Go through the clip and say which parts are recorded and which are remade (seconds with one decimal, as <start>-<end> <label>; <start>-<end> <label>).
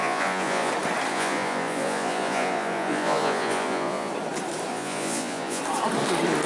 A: 0.0-0.7 remade; 0.7-1.1 recorded; 1.1-4.1 remade; 4.1-4.7 recorded; 4.7-5.6 remade; 5.6-6.5 recorded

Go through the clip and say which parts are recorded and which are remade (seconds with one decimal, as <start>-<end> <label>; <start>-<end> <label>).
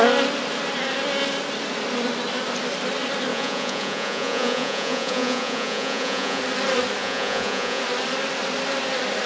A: 0.0-3.3 recorded; 3.3-6.4 remade; 6.4-7.0 recorded; 7.0-7.8 remade; 7.8-9.3 recorded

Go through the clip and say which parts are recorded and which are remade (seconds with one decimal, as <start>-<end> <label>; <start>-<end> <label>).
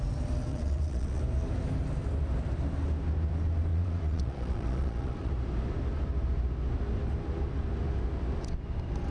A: 0.0-0.5 recorded; 0.5-1.2 remade; 1.2-3.7 recorded; 3.7-5.3 remade; 5.3-9.1 recorded